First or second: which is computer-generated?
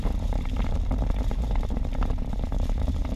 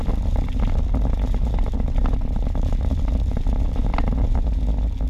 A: first